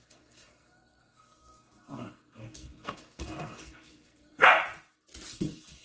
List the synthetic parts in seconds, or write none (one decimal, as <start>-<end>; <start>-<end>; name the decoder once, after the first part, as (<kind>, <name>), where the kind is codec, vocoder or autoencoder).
0.0-4.6 (codec, SNAC); 5.3-5.8